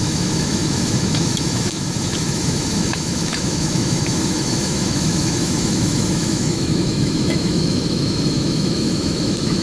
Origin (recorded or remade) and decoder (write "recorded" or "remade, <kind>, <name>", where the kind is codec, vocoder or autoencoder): remade, autoencoder, DAC-VAE